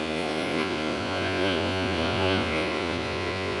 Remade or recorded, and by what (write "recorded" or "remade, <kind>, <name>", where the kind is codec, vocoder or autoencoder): remade, vocoder, Vocos